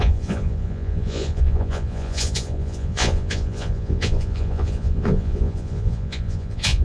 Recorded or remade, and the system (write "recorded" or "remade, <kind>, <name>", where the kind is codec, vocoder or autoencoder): remade, vocoder, Vocos